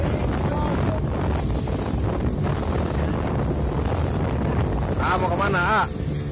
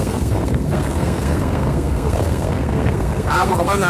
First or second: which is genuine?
first